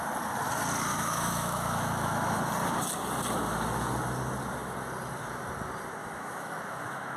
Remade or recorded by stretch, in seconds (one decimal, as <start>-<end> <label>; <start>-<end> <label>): 0.0-0.9 recorded; 0.9-2.4 remade; 2.4-6.0 recorded; 6.0-7.2 remade